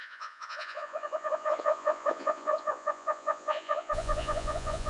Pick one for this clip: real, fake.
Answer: fake